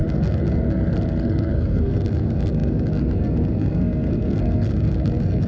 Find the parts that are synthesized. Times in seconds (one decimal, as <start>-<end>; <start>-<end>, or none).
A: 0.0-5.5